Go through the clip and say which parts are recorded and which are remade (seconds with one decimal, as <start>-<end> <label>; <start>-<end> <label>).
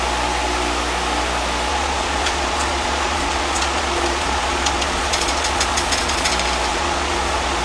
0.0-1.7 recorded; 1.7-6.3 remade; 6.3-6.7 recorded; 6.7-7.6 remade